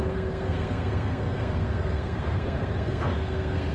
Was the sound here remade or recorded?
remade